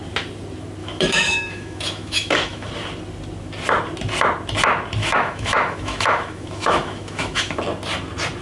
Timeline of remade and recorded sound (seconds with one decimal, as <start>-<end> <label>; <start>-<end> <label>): 0.0-0.8 recorded; 0.8-2.7 remade; 2.7-5.0 recorded; 5.0-7.6 remade; 7.6-8.4 recorded